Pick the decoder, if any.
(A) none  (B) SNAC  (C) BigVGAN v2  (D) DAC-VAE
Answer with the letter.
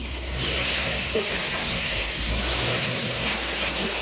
B